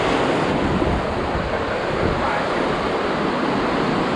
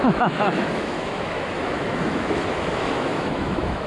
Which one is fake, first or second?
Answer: second